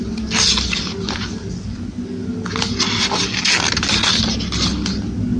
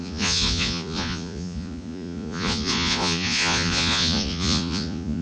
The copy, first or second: second